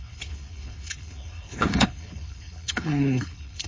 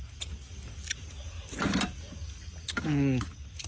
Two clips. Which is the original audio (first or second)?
second